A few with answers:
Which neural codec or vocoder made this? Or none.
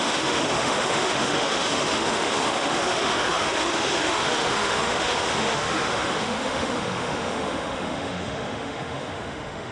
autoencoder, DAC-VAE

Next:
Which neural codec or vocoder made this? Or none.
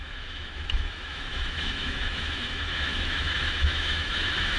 autoencoder, DAC-VAE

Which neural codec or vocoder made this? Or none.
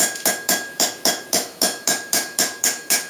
autoencoder, DAC-VAE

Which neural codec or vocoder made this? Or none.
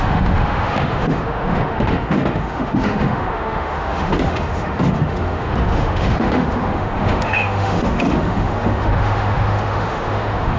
autoencoder, DAC-VAE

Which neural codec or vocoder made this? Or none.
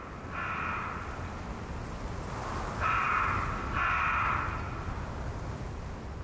none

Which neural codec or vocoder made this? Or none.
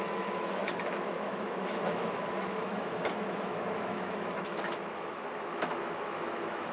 autoencoder, DAC-VAE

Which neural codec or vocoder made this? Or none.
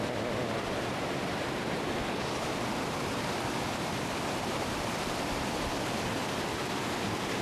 none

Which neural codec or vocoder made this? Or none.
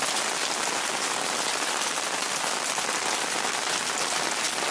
none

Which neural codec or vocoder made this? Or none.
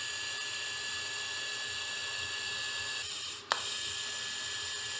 none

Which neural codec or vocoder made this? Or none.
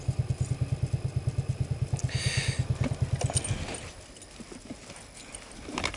none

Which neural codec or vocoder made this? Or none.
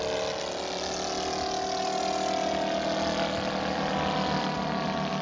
none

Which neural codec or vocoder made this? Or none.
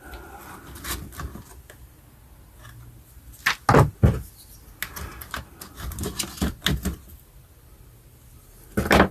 none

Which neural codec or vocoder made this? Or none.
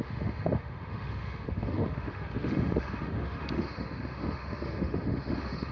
autoencoder, DAC-VAE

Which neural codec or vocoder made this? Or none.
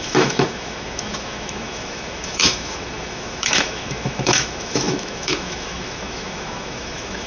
autoencoder, DAC-VAE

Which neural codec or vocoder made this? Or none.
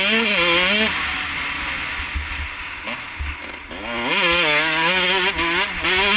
none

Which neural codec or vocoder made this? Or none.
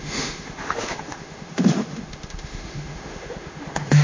autoencoder, DAC-VAE